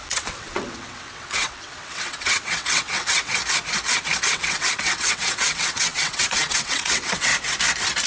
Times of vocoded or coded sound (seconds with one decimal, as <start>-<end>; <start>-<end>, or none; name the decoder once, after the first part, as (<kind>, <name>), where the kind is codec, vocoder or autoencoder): 0.0-3.3 (vocoder, WaveNeXt); 4.3-7.3